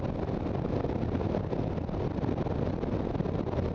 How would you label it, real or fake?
real